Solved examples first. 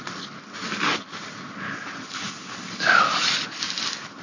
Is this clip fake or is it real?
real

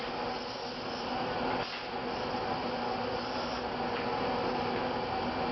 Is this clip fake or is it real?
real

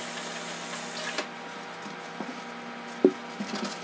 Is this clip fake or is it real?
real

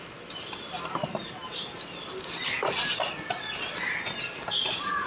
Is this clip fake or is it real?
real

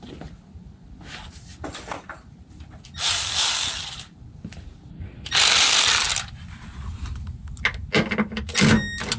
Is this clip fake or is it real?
real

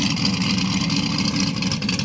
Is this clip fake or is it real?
real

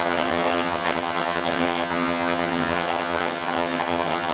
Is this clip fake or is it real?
fake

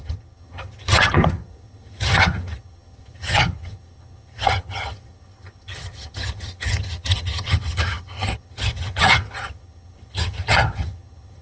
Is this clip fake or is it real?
fake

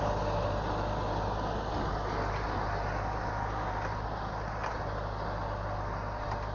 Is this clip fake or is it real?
real